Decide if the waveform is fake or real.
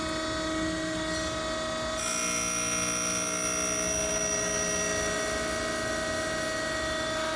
real